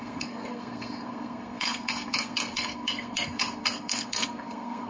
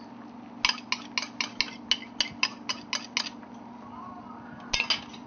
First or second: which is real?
second